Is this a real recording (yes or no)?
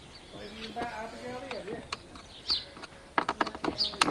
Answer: yes